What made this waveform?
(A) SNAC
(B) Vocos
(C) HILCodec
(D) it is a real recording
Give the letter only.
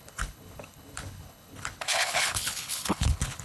C